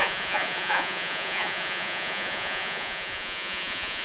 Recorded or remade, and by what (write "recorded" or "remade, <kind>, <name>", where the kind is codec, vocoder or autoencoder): remade, vocoder, Vocos